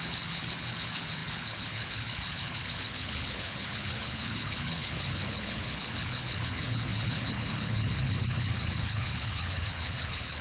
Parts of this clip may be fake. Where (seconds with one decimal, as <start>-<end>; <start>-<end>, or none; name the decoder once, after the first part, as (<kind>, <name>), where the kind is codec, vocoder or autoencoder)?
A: 0.0-10.4 (codec, HILCodec)